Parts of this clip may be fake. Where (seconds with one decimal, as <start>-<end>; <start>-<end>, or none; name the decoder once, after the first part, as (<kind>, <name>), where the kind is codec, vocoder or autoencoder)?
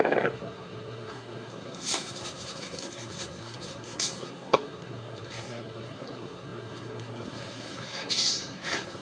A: 0.0-9.0 (codec, SNAC)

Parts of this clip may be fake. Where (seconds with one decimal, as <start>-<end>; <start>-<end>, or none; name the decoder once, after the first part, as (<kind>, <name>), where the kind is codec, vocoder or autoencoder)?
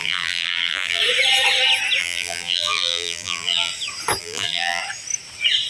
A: 0.0-1.0 (vocoder, BigVGAN v2); 2.0-3.7; 4.2-4.8